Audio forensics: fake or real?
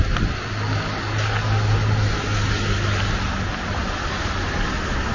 real